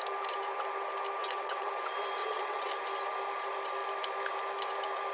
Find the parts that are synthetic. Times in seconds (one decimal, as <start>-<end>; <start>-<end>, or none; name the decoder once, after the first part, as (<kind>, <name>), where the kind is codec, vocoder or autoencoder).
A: 1.2-1.7 (vocoder, WaveNeXt); 2.2-2.7